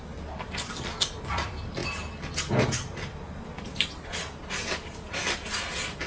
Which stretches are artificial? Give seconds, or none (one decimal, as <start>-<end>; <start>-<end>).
none